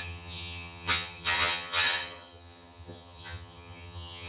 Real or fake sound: fake